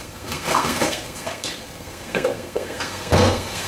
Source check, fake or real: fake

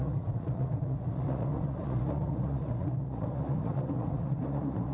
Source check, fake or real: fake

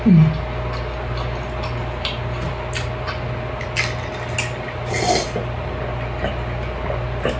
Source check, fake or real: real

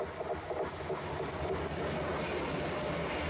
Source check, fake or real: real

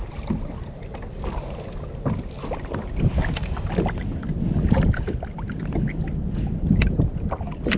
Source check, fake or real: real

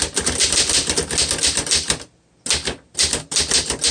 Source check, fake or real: real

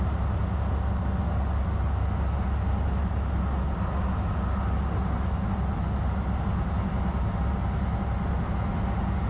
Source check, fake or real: real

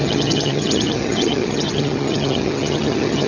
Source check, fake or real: fake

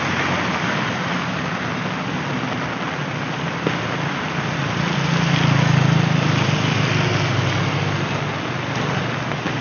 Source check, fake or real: real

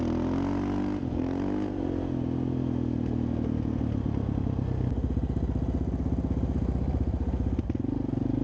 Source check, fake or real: real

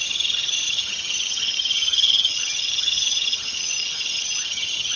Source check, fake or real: fake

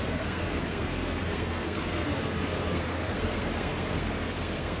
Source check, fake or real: fake